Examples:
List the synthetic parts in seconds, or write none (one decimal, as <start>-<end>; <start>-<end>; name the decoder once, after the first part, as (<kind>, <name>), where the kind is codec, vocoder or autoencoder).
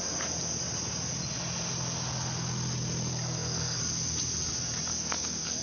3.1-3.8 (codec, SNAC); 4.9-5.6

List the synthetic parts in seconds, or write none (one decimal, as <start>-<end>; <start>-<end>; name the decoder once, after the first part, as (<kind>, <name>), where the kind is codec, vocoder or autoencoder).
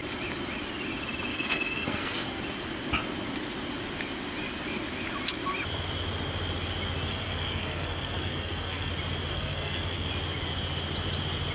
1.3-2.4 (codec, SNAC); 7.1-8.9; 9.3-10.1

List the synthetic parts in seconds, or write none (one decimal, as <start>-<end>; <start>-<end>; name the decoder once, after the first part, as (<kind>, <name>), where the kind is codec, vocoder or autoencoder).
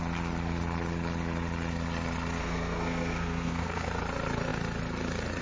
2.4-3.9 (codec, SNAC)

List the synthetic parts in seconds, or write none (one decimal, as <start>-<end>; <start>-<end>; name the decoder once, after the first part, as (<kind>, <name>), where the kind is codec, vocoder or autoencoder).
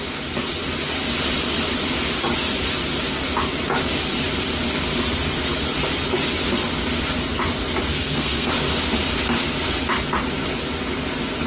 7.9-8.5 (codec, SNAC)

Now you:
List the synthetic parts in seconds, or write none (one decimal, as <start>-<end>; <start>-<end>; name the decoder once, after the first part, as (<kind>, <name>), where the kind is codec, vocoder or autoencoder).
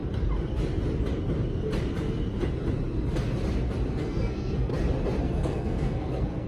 3.9-4.7 (codec, SNAC); 5.2-6.5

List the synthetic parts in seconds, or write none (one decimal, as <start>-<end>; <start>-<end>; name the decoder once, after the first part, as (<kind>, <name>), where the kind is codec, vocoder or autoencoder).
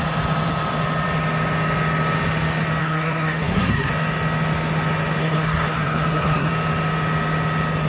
2.8-3.9 (codec, SNAC); 5.2-6.5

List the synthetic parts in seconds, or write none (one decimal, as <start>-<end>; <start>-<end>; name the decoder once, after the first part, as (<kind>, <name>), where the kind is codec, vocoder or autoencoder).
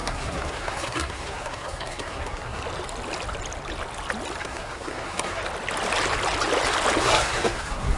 0.0-2.6 (codec, SNAC); 4.4-5.4; 7.0-8.0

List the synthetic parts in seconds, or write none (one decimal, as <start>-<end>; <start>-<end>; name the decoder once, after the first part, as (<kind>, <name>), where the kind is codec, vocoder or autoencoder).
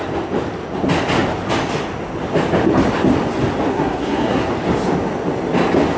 3.7-4.5 (codec, SNAC)